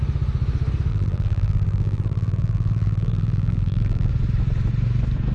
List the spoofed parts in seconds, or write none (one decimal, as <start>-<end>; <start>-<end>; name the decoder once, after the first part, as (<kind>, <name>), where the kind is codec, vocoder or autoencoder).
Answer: 0.9-4.1 (vocoder, BigVGAN v2)